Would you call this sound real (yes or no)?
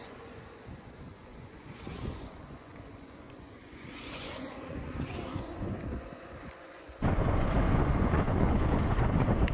no